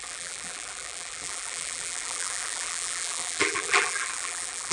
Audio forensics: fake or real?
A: fake